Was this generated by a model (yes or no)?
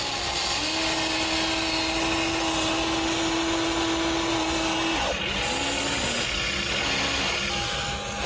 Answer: no